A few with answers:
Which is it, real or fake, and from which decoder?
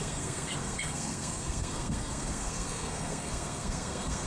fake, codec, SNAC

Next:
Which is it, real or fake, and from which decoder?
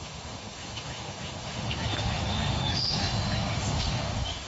fake, autoencoder, DAC-VAE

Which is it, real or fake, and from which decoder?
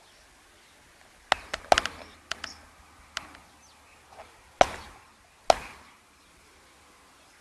real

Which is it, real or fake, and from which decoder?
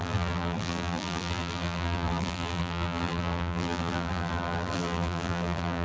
fake, vocoder, BigVGAN v2